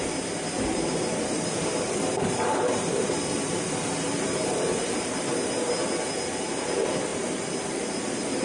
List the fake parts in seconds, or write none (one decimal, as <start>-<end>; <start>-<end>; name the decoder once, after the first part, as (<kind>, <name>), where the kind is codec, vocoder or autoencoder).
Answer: 0.7-5.2 (vocoder, BigVGAN v2)